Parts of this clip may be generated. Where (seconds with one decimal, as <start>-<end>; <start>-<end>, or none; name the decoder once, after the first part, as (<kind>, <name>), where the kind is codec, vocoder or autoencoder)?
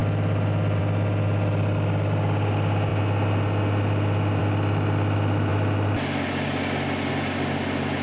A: none